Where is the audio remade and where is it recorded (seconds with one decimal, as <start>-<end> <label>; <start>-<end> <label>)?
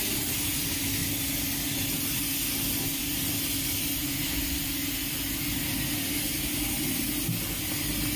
0.0-8.2 recorded